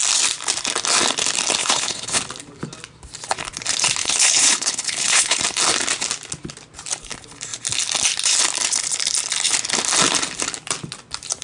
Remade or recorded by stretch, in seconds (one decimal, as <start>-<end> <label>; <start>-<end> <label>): 0.0-1.6 recorded; 1.6-2.2 remade; 2.2-4.0 recorded; 4.0-5.4 remade; 5.4-11.4 recorded